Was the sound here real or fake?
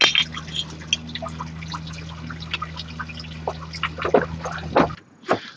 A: real